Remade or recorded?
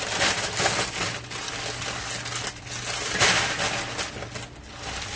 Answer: recorded